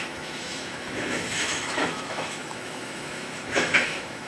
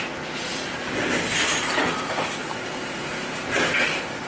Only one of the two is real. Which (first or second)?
second